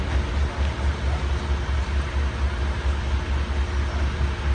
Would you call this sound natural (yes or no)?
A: yes